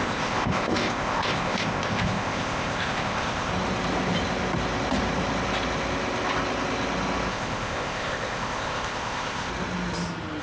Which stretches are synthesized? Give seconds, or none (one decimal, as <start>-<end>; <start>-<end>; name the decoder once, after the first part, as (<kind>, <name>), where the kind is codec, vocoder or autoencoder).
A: 0.0-3.5 (codec, ZipCodec); 7.3-9.5

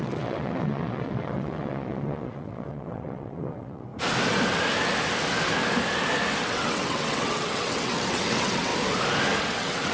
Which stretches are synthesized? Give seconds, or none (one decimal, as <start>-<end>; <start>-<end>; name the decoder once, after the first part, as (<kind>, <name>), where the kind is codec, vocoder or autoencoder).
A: 0.0-3.9 (vocoder, WaveNeXt); 6.4-8.7; 9.4-9.9

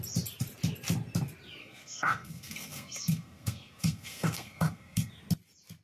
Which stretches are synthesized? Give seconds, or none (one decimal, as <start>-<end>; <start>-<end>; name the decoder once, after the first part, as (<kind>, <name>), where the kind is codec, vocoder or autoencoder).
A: 1.6-5.1 (codec, SNAC)

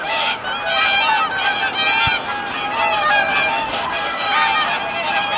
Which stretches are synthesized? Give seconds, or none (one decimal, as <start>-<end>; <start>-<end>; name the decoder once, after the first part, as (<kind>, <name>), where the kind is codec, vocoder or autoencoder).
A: 0.0-0.4 (codec, DAC); 3.5-4.3

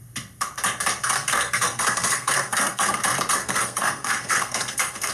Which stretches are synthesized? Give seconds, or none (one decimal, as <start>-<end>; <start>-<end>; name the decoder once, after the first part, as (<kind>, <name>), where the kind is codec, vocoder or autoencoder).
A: 1.0-3.0 (codec, SNAC); 3.4-5.1

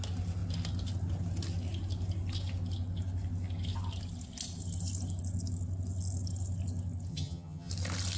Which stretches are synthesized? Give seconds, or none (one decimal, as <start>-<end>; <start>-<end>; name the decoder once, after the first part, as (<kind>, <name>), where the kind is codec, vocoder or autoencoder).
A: 7.1-7.7 (vocoder, HiFi-GAN)

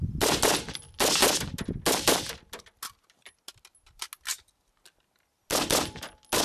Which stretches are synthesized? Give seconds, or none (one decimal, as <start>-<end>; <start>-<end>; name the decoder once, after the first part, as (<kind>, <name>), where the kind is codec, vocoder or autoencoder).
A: none

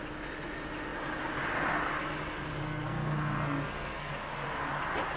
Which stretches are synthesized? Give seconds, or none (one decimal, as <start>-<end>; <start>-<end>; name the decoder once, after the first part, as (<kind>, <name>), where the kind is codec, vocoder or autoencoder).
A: 2.6-4.1 (codec, SNAC)